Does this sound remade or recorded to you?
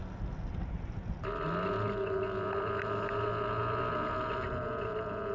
recorded